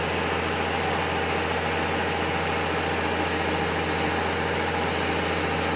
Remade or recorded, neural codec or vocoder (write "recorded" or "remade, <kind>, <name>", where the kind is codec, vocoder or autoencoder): recorded